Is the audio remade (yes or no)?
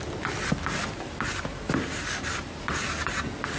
no